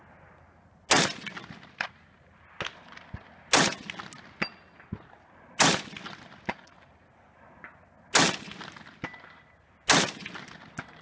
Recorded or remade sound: recorded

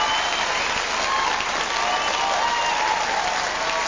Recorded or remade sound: recorded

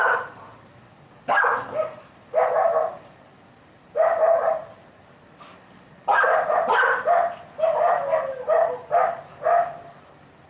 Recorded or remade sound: recorded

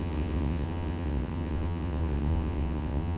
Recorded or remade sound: remade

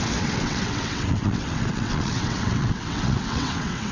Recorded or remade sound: remade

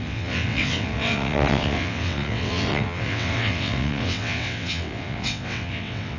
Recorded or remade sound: remade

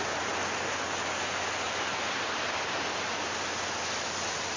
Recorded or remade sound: recorded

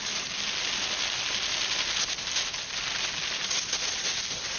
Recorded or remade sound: recorded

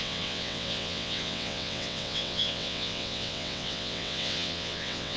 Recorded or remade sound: remade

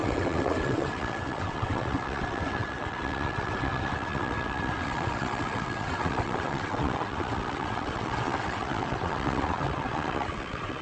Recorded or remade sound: remade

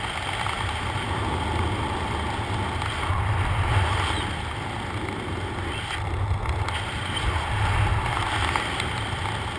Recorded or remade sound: recorded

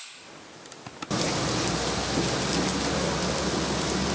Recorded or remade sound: recorded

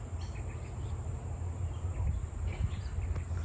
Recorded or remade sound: recorded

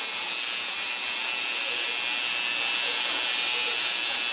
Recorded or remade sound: recorded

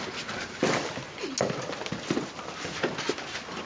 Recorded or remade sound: recorded